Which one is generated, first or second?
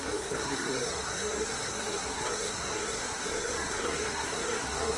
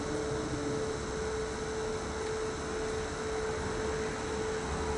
first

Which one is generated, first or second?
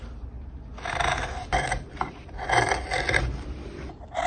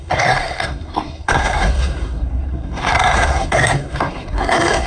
second